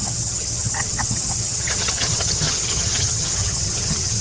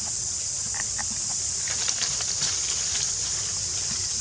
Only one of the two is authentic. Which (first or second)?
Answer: second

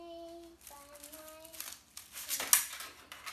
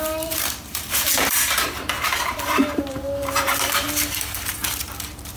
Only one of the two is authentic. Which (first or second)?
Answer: first